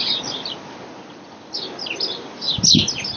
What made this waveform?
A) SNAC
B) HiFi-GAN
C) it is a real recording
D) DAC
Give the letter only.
C